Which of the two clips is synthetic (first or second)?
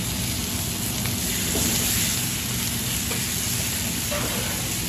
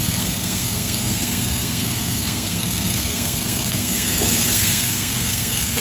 second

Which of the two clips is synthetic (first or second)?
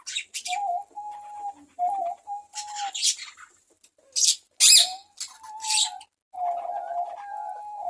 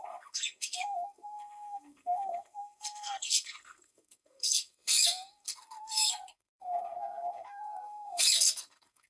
second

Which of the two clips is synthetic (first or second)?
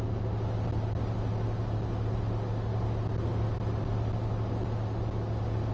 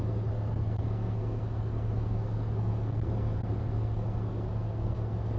second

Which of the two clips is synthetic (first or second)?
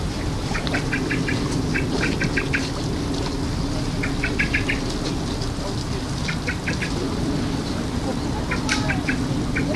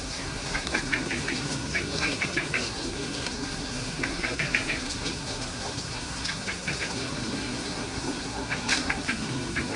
second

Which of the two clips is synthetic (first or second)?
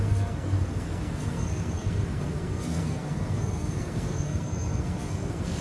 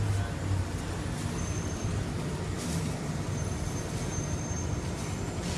first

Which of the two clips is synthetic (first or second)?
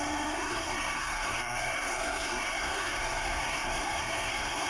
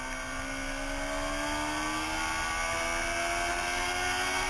first